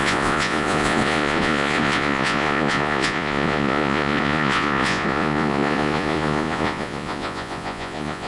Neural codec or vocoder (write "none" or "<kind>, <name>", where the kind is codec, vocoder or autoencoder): vocoder, Vocos